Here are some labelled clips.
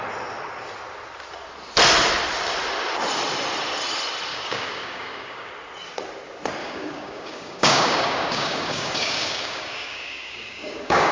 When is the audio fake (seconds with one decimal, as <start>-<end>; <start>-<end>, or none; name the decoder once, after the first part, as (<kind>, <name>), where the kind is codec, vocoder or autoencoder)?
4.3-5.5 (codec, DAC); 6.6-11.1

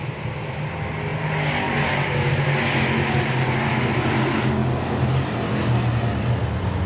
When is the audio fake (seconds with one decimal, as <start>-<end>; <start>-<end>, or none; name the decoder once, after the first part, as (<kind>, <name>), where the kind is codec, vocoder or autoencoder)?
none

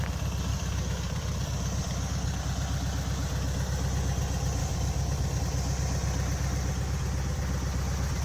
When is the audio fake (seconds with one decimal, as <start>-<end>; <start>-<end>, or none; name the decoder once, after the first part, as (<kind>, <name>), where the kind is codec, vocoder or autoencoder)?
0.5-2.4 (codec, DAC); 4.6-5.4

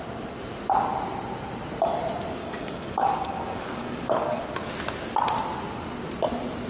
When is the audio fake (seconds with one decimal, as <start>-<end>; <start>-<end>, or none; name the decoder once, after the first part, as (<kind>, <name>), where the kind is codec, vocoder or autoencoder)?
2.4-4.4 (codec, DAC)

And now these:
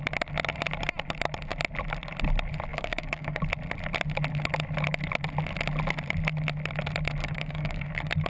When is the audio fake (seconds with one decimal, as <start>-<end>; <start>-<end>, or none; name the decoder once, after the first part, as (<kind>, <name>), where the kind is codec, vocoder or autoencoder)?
2.7-3.4 (codec, DAC); 7.2-7.9